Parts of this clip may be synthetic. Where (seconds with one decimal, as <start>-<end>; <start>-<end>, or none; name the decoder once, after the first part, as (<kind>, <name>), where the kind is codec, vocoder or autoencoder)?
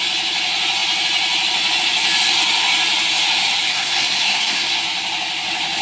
3.7-4.8 (codec, SNAC)